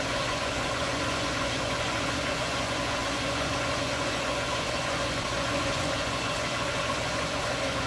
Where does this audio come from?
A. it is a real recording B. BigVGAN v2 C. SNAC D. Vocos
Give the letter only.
D